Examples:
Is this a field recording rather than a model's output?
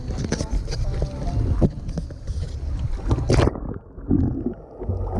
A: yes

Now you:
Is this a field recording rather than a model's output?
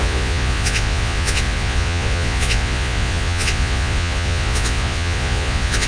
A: no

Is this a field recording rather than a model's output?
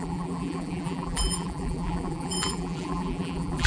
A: no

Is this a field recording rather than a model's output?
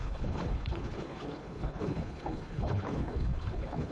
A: no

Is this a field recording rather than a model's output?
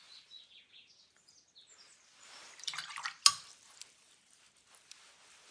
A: yes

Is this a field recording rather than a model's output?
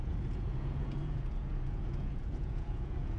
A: no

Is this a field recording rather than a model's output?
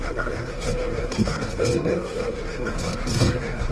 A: no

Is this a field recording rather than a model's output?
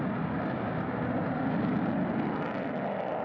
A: yes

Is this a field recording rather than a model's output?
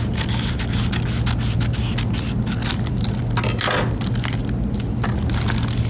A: yes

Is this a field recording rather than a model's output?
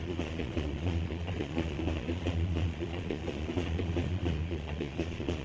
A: no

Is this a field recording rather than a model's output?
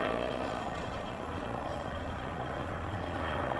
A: no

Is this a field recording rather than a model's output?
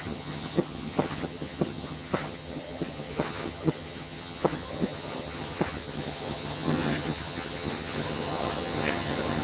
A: no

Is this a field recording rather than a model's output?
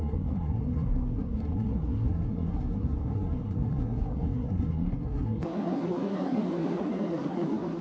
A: no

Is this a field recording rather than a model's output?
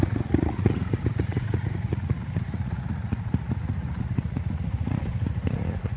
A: no